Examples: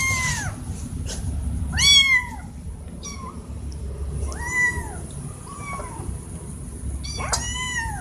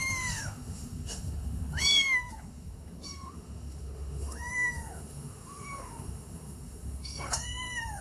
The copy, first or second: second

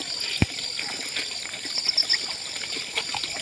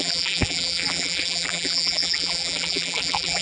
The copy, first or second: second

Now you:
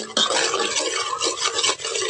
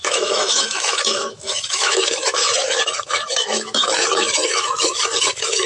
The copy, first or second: second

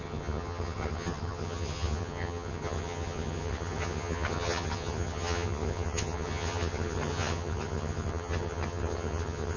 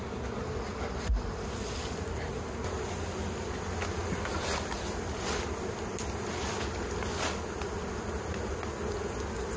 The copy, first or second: first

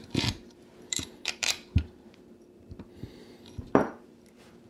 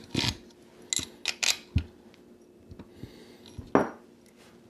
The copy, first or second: first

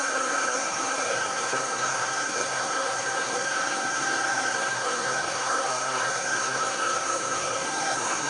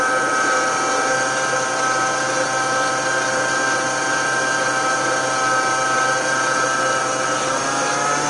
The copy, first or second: first